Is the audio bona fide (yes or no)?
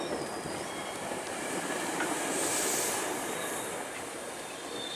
no